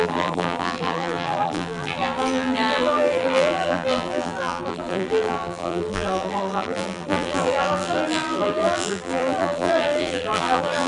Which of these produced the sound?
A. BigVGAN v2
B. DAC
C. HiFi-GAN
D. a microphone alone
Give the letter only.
A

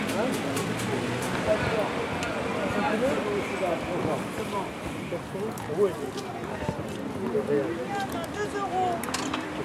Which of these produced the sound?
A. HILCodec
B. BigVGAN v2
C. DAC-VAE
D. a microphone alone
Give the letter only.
D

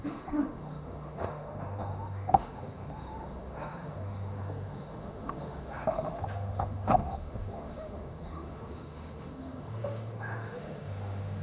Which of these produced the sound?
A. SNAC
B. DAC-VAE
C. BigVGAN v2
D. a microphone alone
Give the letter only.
B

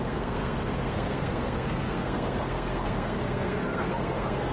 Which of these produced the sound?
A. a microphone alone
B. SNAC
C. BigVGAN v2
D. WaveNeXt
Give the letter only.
B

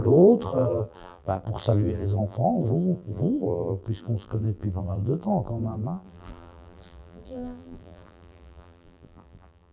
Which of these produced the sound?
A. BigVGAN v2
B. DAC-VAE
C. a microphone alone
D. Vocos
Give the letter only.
A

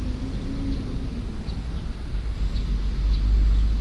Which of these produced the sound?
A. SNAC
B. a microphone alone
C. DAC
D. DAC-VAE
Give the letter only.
B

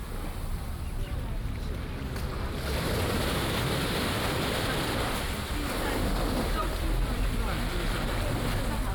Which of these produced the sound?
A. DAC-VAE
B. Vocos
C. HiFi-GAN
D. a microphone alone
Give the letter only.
D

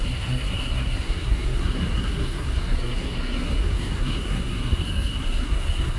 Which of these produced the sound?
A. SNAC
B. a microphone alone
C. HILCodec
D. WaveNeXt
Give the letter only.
A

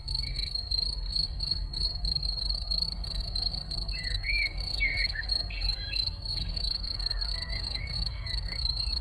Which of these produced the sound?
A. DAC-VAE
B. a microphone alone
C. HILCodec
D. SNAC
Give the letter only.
D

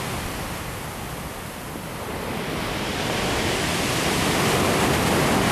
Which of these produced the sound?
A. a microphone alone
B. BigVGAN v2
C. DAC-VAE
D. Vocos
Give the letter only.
A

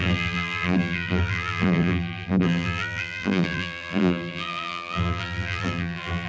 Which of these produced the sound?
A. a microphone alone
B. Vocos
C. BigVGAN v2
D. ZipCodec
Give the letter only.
C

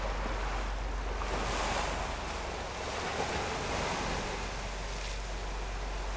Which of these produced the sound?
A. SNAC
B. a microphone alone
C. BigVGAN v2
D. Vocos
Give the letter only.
B